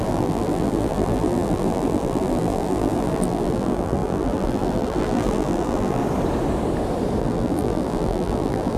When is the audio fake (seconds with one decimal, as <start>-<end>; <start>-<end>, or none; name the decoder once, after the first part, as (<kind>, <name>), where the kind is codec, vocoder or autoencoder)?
0.0-6.0 (vocoder, BigVGAN v2); 7.2-8.8